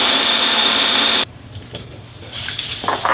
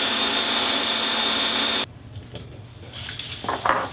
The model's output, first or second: first